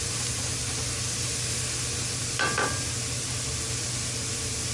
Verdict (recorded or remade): recorded